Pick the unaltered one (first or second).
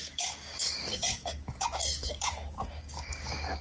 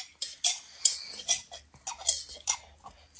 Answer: second